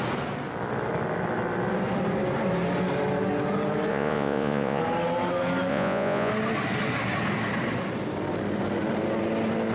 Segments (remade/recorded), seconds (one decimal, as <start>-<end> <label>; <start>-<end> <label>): 0.0-3.9 recorded; 3.9-4.8 remade; 4.8-5.7 recorded; 5.7-6.3 remade; 6.3-9.7 recorded